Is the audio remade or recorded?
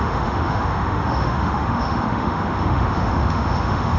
remade